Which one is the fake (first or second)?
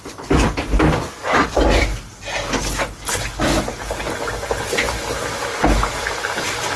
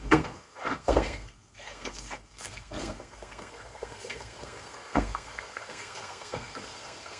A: second